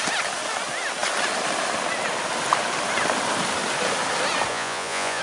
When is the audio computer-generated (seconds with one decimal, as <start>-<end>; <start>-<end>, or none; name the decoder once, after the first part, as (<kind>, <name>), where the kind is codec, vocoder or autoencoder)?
4.5-5.2 (vocoder, Vocos)